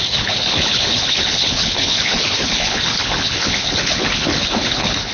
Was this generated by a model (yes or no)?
yes